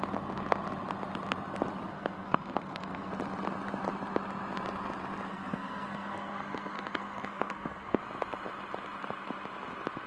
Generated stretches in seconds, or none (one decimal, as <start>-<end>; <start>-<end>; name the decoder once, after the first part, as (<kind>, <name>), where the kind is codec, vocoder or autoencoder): 1.9-3.1 (codec, SNAC); 5.3-8.0